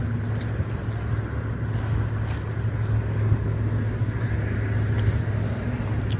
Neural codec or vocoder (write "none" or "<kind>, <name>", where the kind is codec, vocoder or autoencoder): none